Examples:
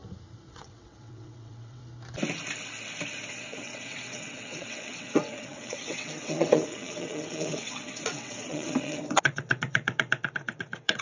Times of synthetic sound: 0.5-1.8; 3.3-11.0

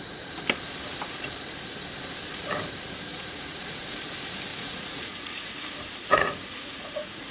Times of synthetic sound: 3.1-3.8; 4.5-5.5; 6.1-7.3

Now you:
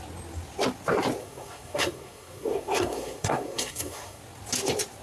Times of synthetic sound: 1.2-4.2